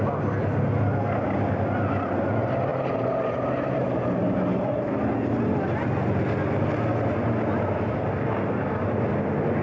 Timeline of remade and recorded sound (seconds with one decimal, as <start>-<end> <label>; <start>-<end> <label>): 0.0-9.6 recorded